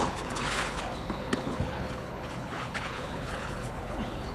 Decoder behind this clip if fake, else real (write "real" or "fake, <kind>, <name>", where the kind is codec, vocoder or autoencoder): fake, codec, HILCodec